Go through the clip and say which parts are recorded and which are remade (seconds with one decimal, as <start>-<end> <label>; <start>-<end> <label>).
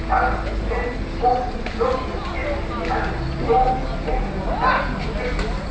0.0-5.7 recorded